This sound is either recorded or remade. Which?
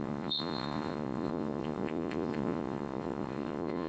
remade